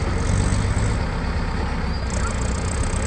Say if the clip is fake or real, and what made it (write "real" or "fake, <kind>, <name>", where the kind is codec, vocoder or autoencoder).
real